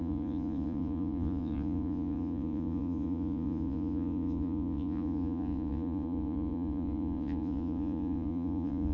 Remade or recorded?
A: remade